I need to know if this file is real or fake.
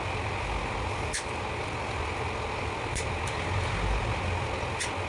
real